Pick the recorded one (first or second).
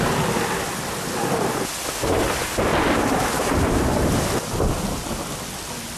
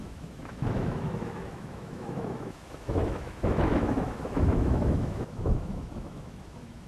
first